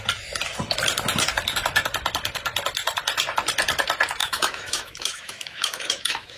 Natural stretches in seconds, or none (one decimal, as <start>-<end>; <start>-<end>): 0.0-4.2